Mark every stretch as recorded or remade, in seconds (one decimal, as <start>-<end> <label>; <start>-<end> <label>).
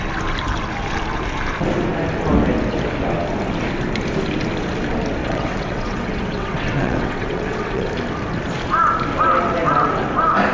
0.0-5.2 recorded; 5.2-7.9 remade; 7.9-10.5 recorded